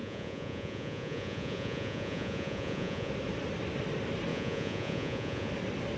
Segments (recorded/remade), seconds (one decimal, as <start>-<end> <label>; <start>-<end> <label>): 0.0-3.1 remade; 3.1-4.3 recorded; 4.3-5.5 remade; 5.5-6.0 recorded